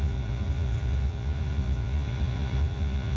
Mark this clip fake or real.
fake